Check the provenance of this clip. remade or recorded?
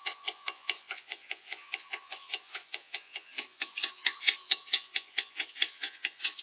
remade